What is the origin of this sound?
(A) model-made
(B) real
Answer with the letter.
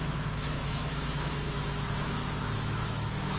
A